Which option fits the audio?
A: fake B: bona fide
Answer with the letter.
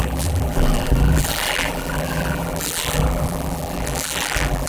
A